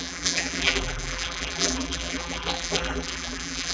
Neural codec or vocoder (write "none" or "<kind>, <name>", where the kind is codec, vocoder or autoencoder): vocoder, BigVGAN v2